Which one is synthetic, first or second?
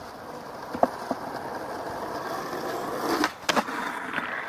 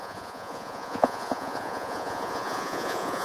second